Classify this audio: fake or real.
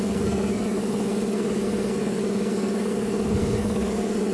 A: fake